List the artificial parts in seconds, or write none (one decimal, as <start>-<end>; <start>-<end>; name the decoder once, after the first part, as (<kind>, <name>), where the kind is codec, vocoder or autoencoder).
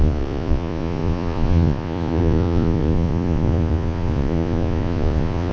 0.0-5.5 (vocoder, Vocos)